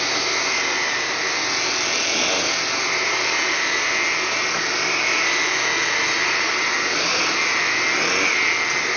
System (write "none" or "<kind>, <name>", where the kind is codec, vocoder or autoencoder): none